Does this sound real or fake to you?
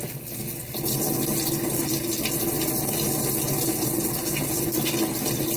real